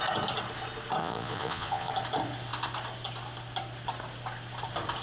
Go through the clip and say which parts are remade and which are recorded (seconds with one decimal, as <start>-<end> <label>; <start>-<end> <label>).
0.0-1.0 recorded; 1.0-1.9 remade; 1.9-5.0 recorded